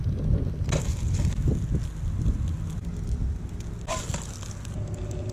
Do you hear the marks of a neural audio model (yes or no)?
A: no